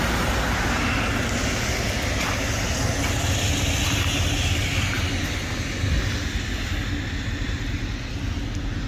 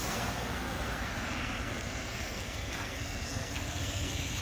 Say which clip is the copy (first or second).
second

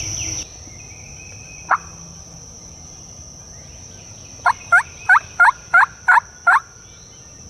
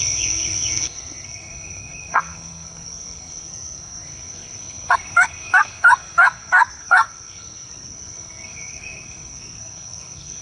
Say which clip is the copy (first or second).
second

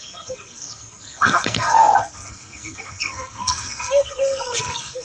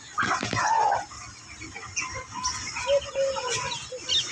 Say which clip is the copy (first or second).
first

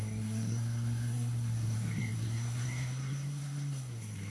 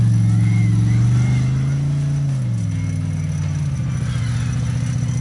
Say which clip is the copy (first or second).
first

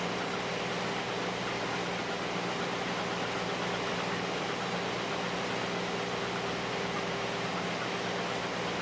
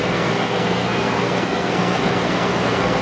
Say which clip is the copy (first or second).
second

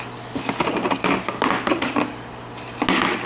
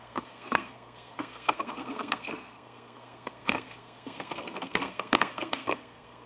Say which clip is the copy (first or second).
second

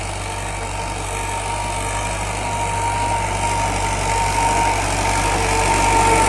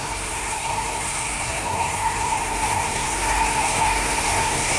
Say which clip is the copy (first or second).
second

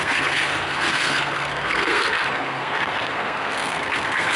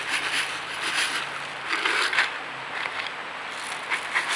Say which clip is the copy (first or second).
first